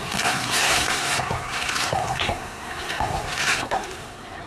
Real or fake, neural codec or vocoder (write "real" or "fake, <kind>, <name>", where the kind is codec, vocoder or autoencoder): fake, codec, SNAC